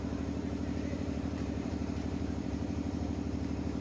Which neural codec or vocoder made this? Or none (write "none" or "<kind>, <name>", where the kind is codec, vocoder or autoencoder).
vocoder, BigVGAN v2